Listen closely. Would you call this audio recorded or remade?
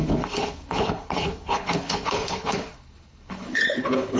remade